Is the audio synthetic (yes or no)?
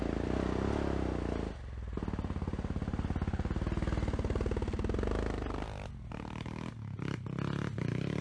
no